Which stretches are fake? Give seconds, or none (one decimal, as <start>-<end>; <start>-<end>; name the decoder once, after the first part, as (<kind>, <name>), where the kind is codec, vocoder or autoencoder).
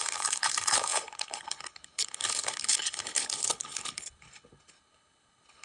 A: 0.0-5.6 (codec, HILCodec)